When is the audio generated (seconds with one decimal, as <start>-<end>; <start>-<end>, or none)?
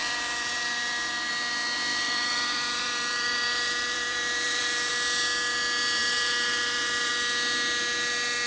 0.0-1.3; 1.9-4.9; 6.0-7.1